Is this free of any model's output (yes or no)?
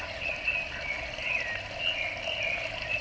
yes